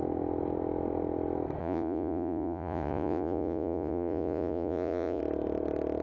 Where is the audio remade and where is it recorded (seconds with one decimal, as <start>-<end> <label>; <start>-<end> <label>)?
0.0-1.6 recorded; 1.6-5.2 remade; 5.2-6.0 recorded